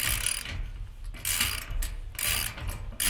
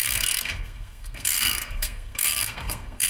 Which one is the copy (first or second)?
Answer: second